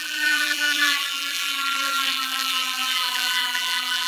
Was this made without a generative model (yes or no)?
no